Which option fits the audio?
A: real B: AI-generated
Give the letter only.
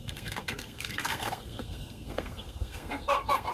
B